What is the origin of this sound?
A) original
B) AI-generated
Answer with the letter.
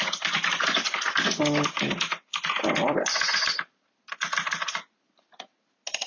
A